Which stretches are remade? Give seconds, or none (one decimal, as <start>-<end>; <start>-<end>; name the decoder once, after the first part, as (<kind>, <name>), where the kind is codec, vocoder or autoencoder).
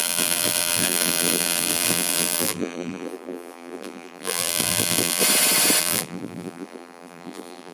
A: 0.0-5.2 (vocoder, BigVGAN v2); 5.8-7.7